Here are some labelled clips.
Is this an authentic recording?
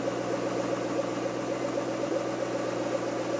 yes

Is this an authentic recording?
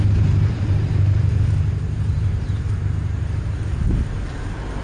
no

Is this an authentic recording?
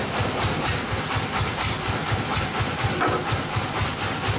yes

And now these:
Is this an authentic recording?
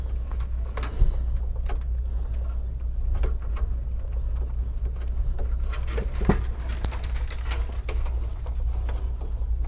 yes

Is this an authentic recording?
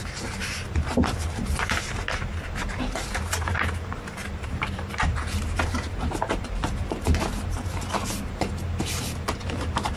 no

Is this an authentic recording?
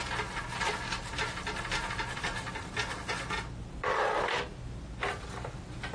yes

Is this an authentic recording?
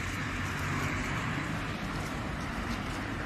no